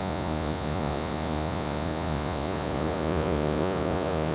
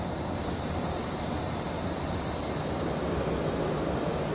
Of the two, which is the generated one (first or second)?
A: first